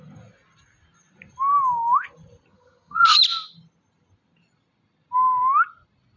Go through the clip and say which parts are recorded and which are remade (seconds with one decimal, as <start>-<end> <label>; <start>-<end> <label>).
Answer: 0.0-2.5 recorded; 2.5-3.2 remade; 3.2-6.2 recorded